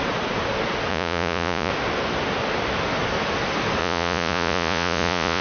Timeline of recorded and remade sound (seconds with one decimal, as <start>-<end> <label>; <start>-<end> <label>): 0.0-0.9 recorded; 0.9-1.7 remade; 1.7-3.8 recorded; 3.8-5.4 remade